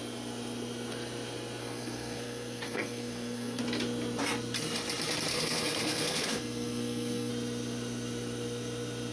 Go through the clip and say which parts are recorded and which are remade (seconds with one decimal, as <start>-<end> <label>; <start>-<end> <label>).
0.0-1.6 recorded; 1.6-3.6 remade; 3.6-5.3 recorded; 5.3-7.3 remade; 7.3-9.1 recorded